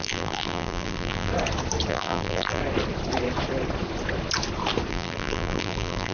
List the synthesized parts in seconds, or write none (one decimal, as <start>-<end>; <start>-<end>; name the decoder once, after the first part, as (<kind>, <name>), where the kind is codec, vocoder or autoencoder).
0.0-1.3 (vocoder, BigVGAN v2); 1.9-2.6; 4.9-6.1